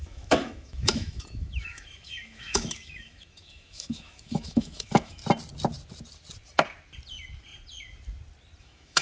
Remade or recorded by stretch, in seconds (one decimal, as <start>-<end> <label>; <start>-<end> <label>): 0.0-5.2 remade; 5.2-8.6 recorded; 8.6-9.0 remade